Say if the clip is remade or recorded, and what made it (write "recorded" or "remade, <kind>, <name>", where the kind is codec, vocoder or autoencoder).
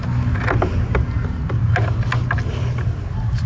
recorded